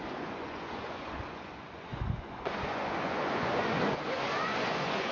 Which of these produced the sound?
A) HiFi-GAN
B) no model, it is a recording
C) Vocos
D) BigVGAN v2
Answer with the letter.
C